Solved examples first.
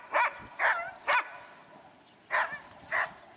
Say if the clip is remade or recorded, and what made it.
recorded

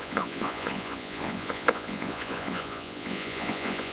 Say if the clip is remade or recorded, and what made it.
remade, vocoder, Vocos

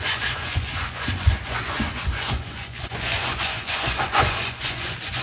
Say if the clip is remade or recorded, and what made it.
remade, vocoder, Vocos